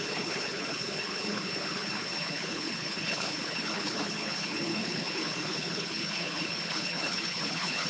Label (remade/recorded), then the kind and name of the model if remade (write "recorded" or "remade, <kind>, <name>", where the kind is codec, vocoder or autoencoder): remade, codec, HILCodec